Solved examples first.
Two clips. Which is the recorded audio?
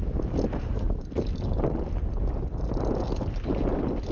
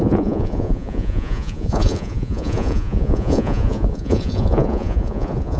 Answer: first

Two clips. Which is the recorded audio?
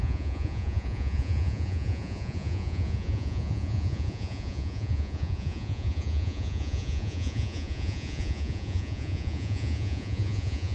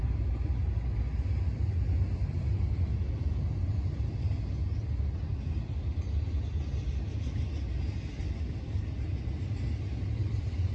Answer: second